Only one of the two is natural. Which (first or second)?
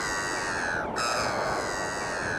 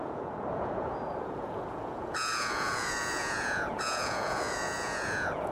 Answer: first